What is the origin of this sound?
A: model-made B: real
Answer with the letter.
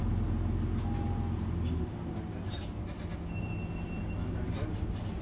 B